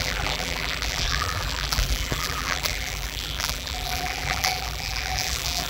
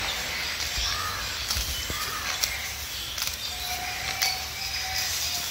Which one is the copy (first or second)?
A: first